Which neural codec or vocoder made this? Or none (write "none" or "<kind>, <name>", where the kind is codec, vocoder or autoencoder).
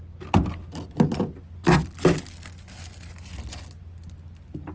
none